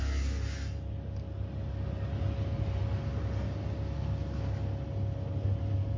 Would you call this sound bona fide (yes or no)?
yes